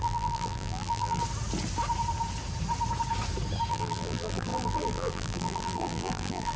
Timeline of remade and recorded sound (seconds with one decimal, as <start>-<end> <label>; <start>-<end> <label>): 0.0-1.2 remade; 1.2-3.7 recorded; 3.7-6.6 remade